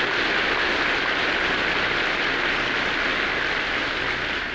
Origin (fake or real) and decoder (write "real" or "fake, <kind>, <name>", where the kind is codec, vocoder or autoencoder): real